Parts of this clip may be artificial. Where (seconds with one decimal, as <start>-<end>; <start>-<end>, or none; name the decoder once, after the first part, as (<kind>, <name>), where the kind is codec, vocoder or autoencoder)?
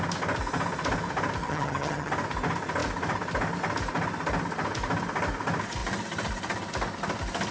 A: 1.4-2.1 (vocoder, HiFi-GAN)